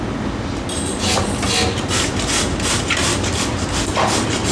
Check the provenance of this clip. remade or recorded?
recorded